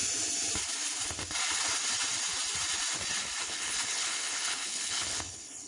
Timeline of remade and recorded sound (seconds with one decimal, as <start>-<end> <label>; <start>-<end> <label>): 0.0-3.4 recorded; 3.4-5.7 remade